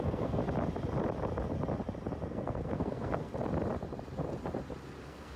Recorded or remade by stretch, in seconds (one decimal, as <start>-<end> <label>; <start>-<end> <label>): 0.0-0.4 remade; 0.4-2.3 recorded; 2.3-3.3 remade; 3.3-5.0 recorded; 5.0-5.4 remade